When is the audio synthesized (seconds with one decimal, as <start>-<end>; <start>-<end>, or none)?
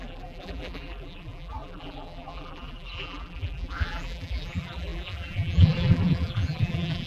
0.0-7.1